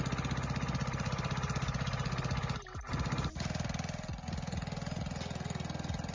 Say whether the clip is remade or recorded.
recorded